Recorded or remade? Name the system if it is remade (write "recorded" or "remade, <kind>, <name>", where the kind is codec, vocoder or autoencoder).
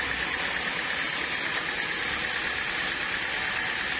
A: recorded